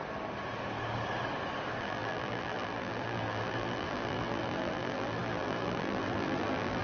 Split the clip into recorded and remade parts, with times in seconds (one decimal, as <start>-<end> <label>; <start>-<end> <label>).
0.0-1.8 recorded; 1.8-6.8 remade